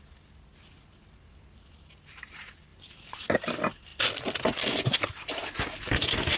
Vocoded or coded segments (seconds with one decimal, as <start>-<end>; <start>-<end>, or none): 2.7-3.5